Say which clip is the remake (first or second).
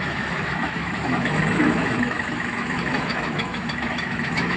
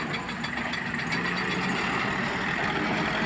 first